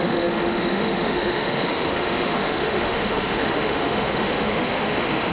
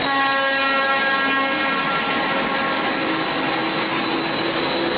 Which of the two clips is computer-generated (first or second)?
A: first